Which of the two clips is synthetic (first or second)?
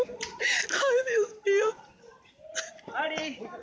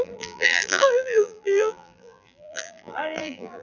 second